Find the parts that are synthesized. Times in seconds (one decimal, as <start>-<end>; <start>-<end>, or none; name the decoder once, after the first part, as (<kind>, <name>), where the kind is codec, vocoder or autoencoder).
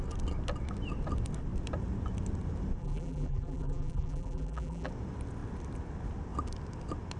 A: 2.8-4.9 (vocoder, BigVGAN v2)